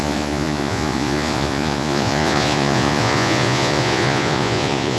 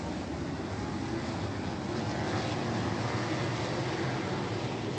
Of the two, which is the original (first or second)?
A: second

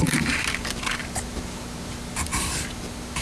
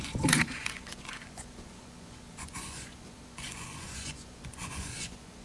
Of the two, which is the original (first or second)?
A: first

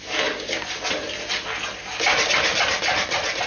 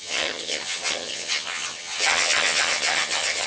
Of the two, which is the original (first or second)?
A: first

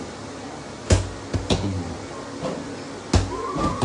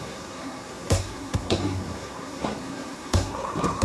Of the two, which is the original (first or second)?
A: first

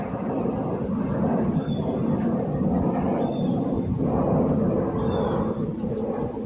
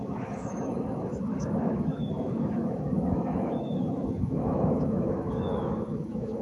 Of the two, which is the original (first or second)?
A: first